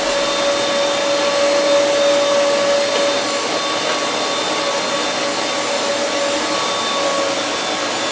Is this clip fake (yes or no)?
no